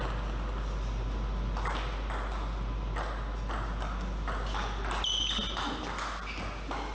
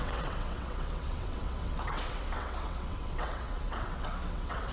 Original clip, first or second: first